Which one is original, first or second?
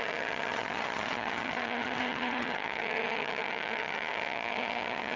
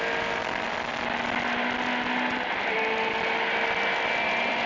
second